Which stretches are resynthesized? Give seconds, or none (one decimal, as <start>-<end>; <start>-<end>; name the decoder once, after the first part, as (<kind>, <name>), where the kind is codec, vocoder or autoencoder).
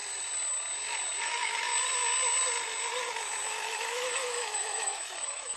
1.2-1.7 (autoencoder, DAC-VAE); 3.5-5.6